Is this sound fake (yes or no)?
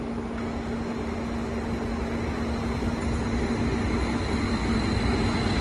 no